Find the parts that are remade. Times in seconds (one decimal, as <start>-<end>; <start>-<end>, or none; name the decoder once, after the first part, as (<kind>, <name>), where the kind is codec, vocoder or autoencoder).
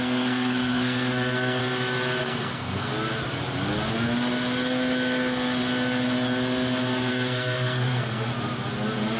0.0-1.6 (codec, SNAC); 2.2-2.9; 7.1-8.3